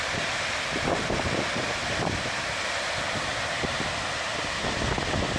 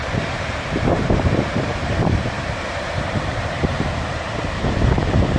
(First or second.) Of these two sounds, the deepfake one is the second